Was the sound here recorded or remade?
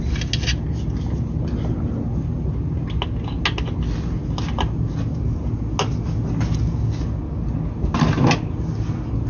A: recorded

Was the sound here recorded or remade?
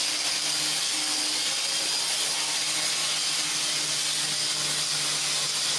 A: recorded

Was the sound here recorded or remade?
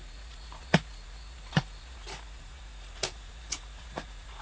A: remade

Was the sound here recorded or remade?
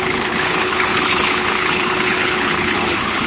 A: remade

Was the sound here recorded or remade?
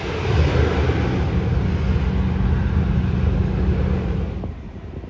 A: recorded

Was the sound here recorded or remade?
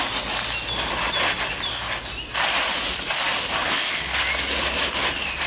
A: recorded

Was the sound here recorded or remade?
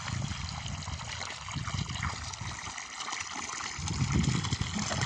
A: recorded